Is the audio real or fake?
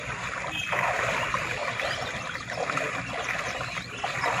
real